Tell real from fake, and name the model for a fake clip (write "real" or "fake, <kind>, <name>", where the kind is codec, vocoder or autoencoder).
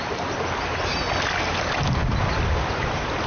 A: real